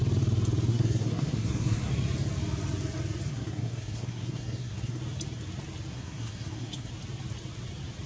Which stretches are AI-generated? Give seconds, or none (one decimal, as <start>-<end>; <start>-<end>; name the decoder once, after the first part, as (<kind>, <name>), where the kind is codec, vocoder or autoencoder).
0.7-1.9 (codec, SNAC); 3.3-5.0; 5.9-6.9